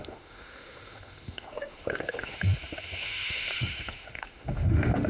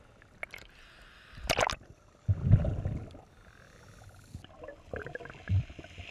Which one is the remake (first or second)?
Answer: first